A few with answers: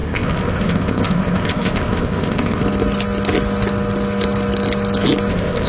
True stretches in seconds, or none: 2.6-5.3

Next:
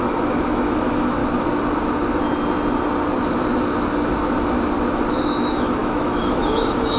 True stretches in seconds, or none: 1.2-5.1

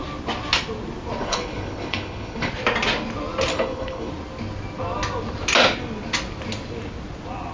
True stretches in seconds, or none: 0.0-1.2; 2.5-3.5; 4.1-7.5

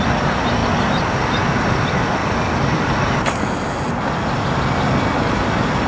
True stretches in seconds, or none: 0.0-5.9